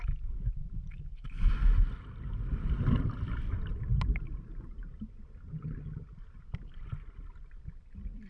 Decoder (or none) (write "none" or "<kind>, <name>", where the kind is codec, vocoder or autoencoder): none